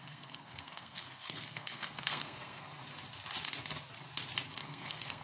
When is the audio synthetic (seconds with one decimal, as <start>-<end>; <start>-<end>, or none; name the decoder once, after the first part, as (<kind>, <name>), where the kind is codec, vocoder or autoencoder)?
0.0-2.8 (codec, SNAC); 4.6-5.2